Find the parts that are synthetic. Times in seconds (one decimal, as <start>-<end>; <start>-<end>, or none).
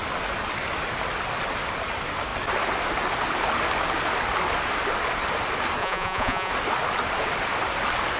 5.8-6.5